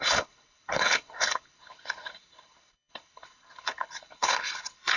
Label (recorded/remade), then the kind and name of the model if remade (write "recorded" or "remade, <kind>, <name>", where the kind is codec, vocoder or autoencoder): remade, codec, HILCodec